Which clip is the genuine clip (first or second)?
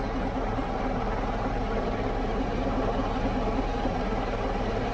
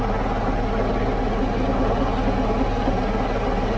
second